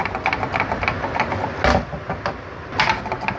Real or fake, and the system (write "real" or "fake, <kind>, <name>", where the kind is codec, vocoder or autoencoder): real